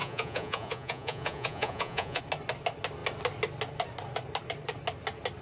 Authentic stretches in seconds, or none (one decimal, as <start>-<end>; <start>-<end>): 2.2-5.4